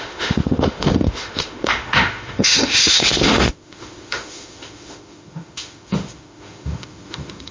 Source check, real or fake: fake